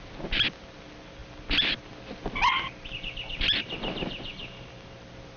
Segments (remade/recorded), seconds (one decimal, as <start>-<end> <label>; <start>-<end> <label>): 0.0-5.4 recorded